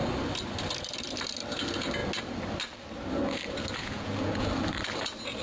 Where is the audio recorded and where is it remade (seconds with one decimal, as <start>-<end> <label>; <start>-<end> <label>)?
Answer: 0.0-3.8 recorded; 3.8-4.5 remade; 4.5-5.4 recorded